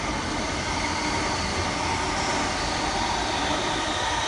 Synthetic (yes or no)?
no